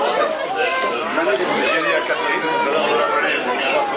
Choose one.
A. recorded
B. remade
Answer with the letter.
A